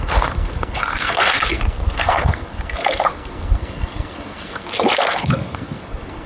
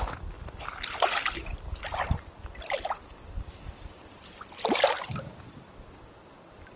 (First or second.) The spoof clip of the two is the first